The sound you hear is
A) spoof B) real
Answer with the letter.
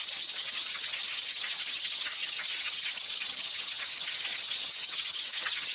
A